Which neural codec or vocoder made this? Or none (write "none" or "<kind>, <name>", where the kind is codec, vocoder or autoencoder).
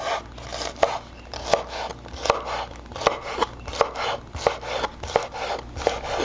none